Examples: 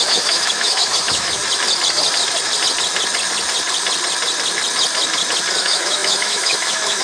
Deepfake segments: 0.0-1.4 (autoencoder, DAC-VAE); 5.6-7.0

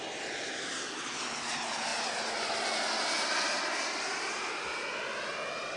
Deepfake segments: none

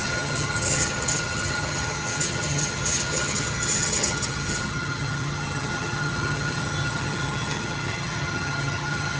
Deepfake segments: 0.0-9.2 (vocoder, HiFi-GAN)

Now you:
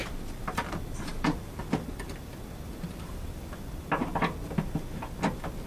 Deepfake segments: none